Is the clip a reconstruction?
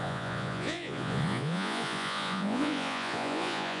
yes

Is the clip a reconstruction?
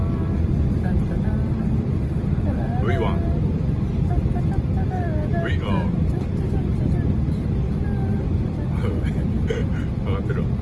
no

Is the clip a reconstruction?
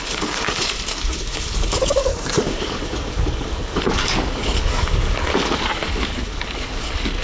yes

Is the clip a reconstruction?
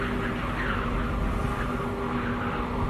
no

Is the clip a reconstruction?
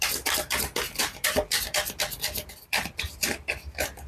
yes